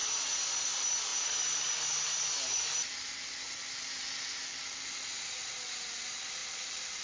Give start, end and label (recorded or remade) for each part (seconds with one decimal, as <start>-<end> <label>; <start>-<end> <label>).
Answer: 0.0-7.0 recorded